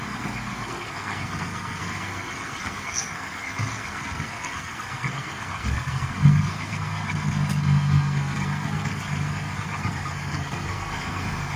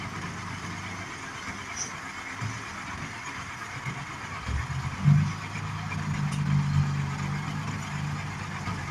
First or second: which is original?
second